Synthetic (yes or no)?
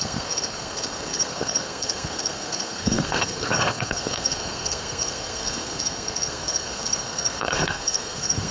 yes